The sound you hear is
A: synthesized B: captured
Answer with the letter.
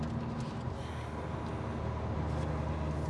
B